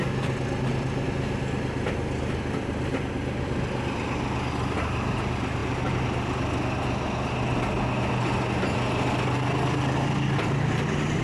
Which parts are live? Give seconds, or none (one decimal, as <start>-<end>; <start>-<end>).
0.0-11.2